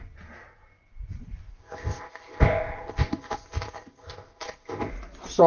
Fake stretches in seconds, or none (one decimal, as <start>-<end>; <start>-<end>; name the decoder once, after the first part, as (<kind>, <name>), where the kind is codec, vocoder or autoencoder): 1.6-4.9 (codec, ZipCodec)

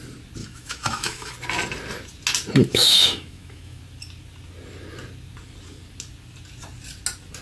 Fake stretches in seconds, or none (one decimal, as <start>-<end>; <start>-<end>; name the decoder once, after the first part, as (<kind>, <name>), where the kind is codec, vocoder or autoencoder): 0.4-1.3 (autoencoder, DAC-VAE); 2.7-3.8

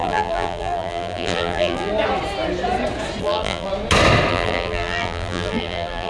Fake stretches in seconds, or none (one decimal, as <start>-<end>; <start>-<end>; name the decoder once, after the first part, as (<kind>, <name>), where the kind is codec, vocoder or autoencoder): 0.0-1.9 (vocoder, BigVGAN v2); 3.2-3.7; 4.3-6.1

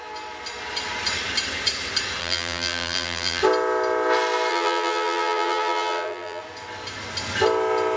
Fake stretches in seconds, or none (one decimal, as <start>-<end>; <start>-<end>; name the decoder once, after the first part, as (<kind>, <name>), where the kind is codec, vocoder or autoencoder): 2.2-3.4 (vocoder, BigVGAN v2); 4.5-6.4

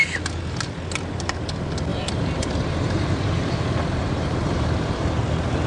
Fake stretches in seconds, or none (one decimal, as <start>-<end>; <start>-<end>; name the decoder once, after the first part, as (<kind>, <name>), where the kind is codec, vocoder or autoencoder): 1.9-5.3 (vocoder, BigVGAN v2)

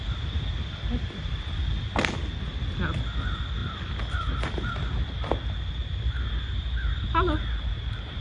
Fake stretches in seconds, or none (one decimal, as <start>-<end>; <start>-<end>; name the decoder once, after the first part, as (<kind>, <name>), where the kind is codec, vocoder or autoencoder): none